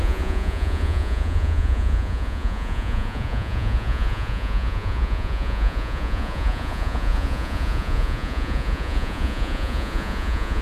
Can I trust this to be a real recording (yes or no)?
no